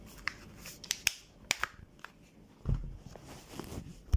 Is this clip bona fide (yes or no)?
yes